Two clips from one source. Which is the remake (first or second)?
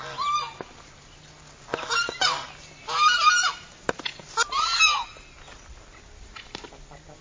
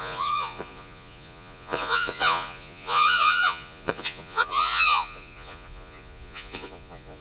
second